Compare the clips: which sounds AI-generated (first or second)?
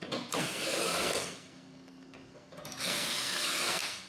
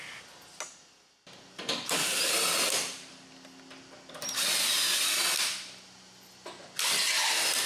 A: first